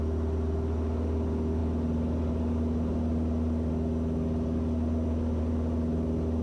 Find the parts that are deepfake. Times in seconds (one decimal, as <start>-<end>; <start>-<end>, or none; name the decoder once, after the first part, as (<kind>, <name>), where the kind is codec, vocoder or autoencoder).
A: none